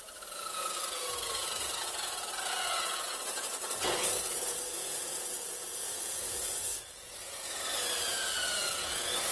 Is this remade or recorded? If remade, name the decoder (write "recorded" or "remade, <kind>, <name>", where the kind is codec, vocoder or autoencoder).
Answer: remade, vocoder, Vocos